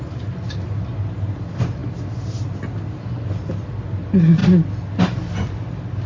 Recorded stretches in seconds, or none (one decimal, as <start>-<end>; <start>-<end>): 0.0-6.1